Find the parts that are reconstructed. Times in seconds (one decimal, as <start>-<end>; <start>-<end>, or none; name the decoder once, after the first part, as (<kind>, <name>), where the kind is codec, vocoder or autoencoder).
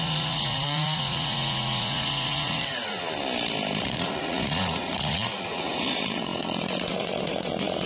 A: 0.0-3.0 (vocoder, Vocos); 3.8-7.9